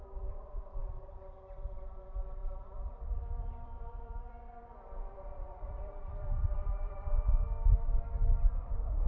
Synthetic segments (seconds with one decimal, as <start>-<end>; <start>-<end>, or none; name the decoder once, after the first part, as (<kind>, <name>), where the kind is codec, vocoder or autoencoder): 2.4-7.1 (vocoder, BigVGAN v2)